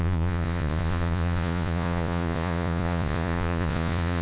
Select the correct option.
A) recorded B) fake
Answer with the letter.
B